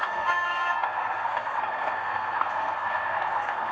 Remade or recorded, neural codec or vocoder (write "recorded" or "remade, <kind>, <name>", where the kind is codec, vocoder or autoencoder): remade, codec, SNAC